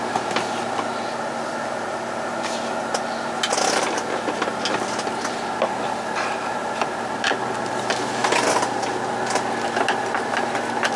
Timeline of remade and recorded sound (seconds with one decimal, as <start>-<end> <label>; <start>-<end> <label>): 0.0-11.0 recorded